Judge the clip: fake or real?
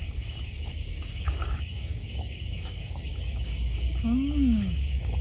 fake